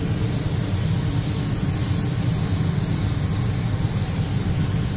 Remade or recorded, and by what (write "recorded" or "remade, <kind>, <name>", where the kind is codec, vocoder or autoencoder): recorded